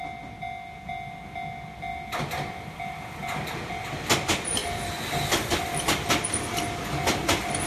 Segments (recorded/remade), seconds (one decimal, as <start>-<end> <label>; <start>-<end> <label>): 0.0-7.7 recorded